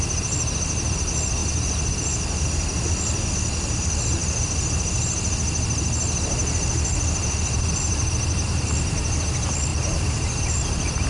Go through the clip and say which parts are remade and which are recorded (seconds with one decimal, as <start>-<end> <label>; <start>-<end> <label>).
0.0-9.7 recorded; 9.7-10.4 remade; 10.4-11.1 recorded